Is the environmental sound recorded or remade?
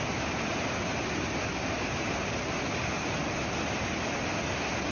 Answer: recorded